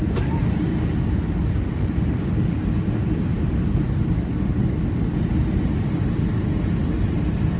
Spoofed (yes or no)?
no